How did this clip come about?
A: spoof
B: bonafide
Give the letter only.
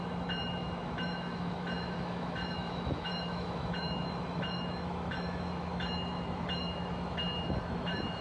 A